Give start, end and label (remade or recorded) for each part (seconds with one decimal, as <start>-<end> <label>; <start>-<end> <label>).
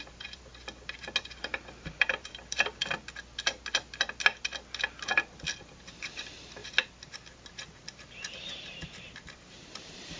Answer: 0.0-0.5 remade; 0.5-1.2 recorded; 1.2-2.8 remade; 2.8-5.6 recorded; 5.6-6.6 remade; 6.6-7.9 recorded; 7.9-10.2 remade